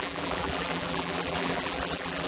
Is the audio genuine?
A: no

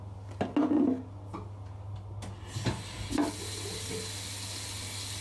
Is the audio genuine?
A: yes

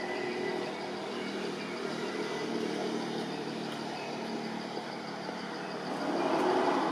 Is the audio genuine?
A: yes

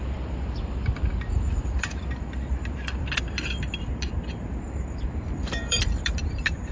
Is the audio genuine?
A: no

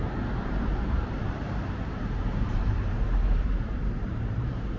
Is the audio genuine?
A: no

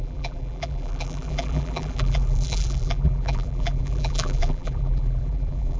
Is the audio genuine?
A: no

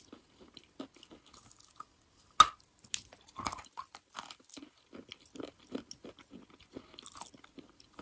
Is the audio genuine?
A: yes